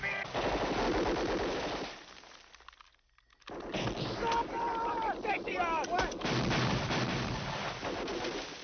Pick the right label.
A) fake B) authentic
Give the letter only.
B